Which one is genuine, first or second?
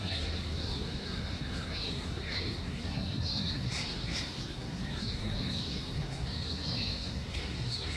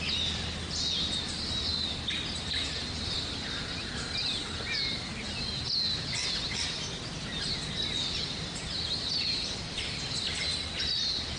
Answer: second